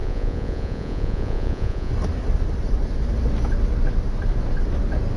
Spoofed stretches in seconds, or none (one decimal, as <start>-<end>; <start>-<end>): 0.0-1.9